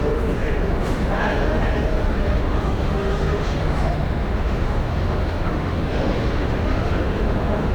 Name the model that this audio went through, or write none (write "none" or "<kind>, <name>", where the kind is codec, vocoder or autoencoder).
autoencoder, DAC-VAE